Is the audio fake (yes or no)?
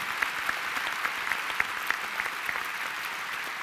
no